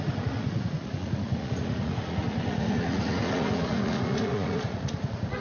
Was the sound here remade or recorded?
remade